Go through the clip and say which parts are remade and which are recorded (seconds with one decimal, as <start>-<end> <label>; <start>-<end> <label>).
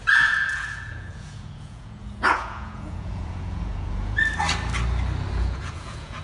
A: 0.0-4.2 remade; 4.2-5.3 recorded; 5.3-6.2 remade